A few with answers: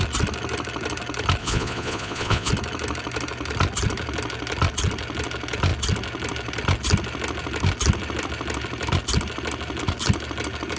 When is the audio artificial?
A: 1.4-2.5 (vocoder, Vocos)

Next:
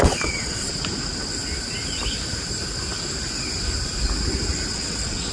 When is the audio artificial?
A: 0.0-0.7 (vocoder, WaveNeXt); 4.7-5.3